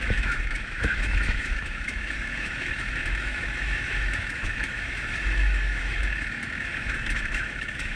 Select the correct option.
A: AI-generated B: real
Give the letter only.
A